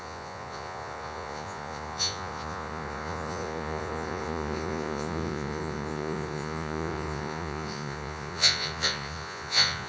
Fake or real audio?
fake